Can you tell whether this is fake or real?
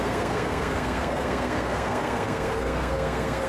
fake